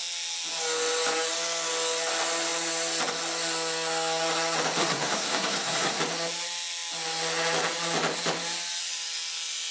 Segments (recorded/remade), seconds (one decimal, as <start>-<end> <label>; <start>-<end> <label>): 0.0-4.8 recorded; 4.8-6.0 remade; 6.0-9.7 recorded